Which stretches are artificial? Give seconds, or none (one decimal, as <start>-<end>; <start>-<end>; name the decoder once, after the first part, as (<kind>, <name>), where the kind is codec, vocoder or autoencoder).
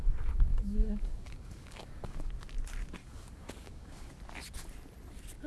0.5-2.3 (codec, DAC); 3.0-4.1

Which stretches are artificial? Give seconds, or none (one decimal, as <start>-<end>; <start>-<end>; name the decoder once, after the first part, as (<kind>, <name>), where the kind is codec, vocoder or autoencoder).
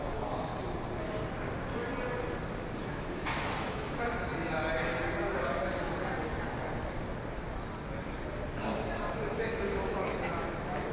0.0-0.5 (autoencoder, DAC-VAE); 2.7-4.3; 9.4-10.9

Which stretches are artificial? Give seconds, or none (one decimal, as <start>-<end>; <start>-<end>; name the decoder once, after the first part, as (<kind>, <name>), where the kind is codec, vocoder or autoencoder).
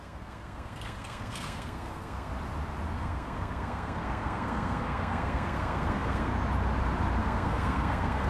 0.0-2.3 (codec, SNAC); 3.0-6.3; 7.2-8.3